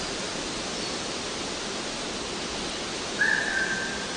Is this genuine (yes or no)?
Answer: yes